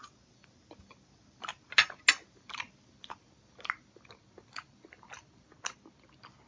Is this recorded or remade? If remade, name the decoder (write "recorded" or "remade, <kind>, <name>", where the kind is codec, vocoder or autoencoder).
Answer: recorded